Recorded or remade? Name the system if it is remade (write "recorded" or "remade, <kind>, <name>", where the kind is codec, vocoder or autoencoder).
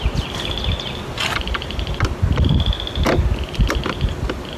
recorded